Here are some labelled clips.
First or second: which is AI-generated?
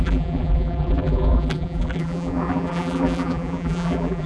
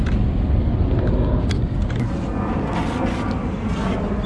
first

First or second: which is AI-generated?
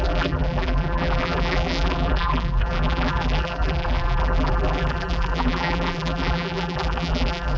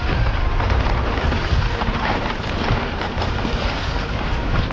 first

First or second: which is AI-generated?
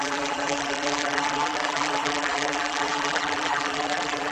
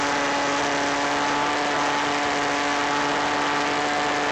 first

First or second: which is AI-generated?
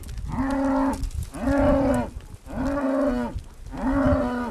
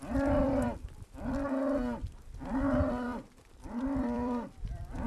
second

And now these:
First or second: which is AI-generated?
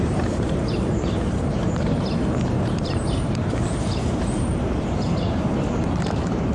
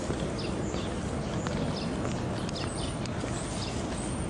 first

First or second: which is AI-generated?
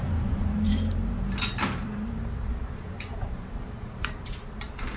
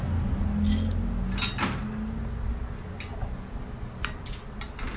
first